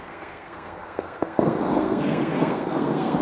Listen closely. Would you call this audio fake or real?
fake